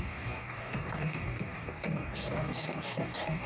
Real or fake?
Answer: fake